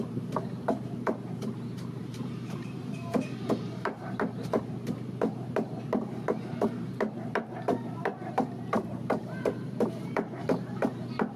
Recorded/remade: remade